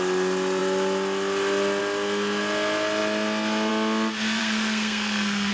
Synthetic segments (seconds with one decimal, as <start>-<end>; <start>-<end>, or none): 4.4-5.5